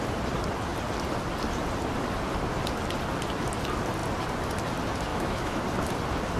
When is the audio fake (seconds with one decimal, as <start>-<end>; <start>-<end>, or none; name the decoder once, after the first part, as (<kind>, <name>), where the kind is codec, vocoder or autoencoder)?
5.1-5.6 (autoencoder, DAC-VAE)